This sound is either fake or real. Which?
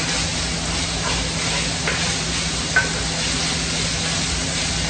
real